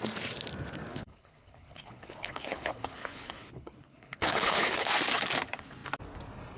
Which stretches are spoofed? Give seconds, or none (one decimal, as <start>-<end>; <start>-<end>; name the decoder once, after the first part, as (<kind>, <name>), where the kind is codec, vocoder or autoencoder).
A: 0.9-4.9 (codec, HILCodec)